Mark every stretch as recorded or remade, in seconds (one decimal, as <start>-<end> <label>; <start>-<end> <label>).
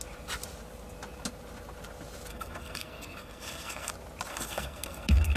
0.0-2.3 recorded; 2.3-3.9 remade; 3.9-4.3 recorded; 4.3-5.4 remade